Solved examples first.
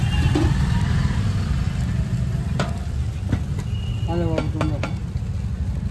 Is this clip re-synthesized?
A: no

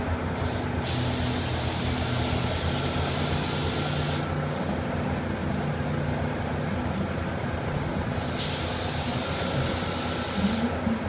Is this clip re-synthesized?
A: no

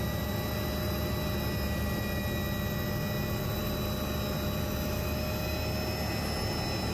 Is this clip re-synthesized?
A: no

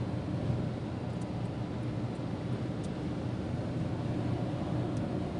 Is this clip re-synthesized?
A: no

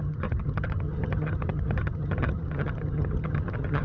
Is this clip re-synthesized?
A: yes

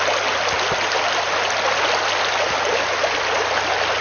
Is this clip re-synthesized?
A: no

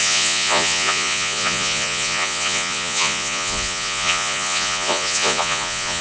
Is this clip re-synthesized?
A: yes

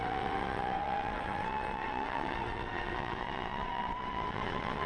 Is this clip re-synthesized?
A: yes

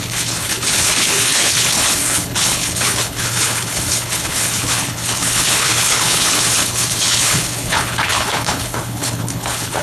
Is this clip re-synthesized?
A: yes